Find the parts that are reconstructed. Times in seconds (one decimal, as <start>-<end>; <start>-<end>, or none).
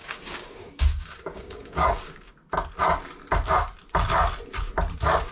0.0-2.3